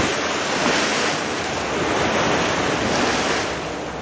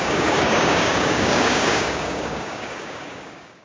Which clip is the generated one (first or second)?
second